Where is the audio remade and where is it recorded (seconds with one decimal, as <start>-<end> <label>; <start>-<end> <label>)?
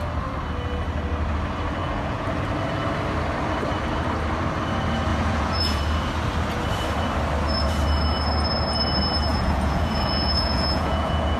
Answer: 0.0-1.8 recorded; 1.8-2.3 remade; 2.3-5.1 recorded; 5.1-5.8 remade; 5.8-9.3 recorded; 9.3-11.4 remade